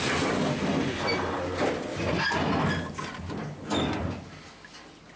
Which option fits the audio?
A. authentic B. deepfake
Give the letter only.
A